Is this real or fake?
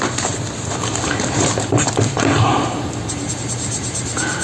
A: fake